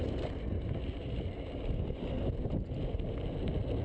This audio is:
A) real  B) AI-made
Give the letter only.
A